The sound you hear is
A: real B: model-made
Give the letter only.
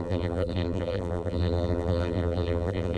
B